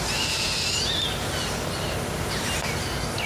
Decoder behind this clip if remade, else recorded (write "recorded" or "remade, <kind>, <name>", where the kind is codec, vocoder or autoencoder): recorded